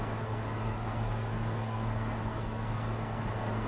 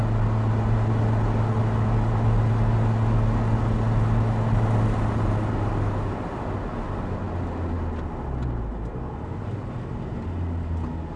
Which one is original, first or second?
second